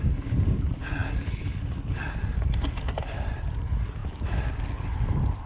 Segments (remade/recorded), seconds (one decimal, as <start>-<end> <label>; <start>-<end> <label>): 0.0-5.5 recorded